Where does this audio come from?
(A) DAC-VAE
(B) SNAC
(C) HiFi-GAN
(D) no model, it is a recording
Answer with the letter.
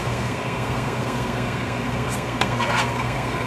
B